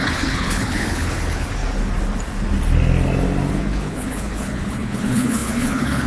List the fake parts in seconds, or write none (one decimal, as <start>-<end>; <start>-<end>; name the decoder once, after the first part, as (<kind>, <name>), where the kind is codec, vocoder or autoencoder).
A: 0.0-1.6 (codec, HILCodec); 3.5-6.1